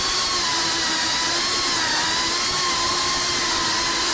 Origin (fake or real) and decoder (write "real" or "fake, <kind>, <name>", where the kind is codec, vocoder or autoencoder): real